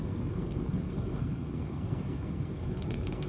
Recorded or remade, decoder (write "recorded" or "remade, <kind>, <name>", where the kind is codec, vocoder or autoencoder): remade, codec, SNAC